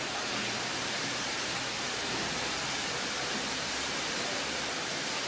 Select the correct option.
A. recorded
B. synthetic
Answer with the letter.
A